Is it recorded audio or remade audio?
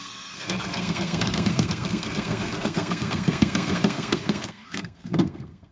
remade